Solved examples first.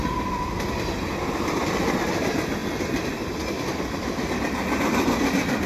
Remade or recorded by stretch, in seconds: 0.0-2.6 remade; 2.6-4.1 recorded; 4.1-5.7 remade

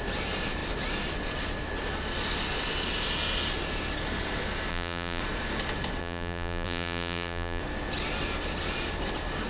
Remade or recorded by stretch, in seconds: 0.0-4.7 recorded; 4.7-5.2 remade; 5.2-6.0 recorded; 6.0-7.6 remade; 7.6-9.5 recorded

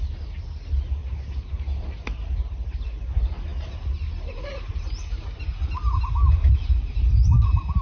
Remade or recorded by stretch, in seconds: 0.0-1.0 recorded; 1.0-2.8 remade; 2.8-7.8 recorded

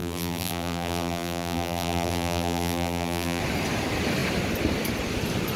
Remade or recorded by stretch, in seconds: 0.0-3.4 remade; 3.4-5.6 recorded